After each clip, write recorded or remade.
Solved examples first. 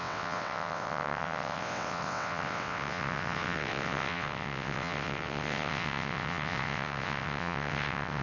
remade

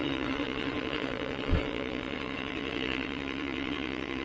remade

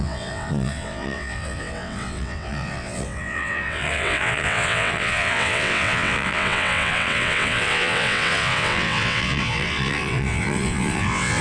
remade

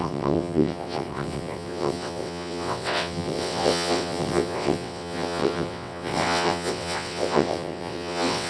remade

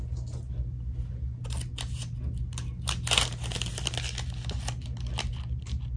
recorded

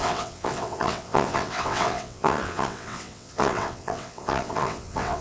remade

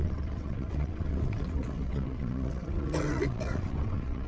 remade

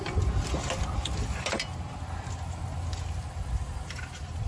recorded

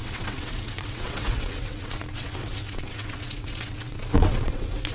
remade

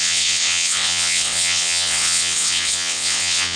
remade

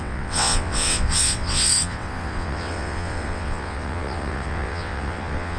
remade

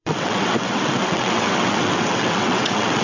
remade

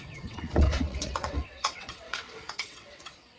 remade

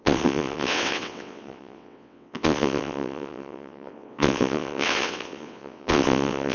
remade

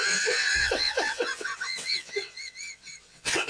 remade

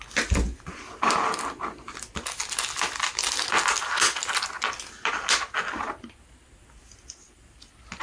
recorded